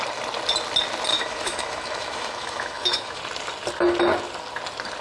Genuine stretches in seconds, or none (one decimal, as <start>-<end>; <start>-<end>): 0.0-1.1; 3.2-5.0